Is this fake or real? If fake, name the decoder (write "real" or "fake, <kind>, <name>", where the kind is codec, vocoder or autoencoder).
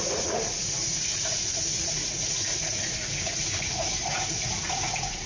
fake, vocoder, Vocos